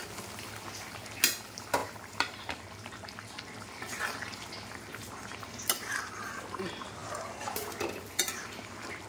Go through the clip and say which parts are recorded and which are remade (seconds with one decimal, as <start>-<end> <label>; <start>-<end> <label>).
0.0-9.1 recorded